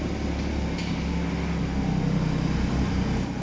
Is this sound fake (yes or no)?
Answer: no